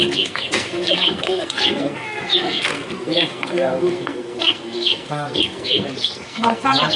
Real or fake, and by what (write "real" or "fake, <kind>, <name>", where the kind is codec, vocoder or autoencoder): fake, codec, SNAC